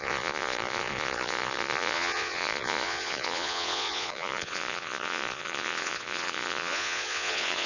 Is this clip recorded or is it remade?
remade